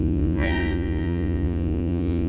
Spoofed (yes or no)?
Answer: yes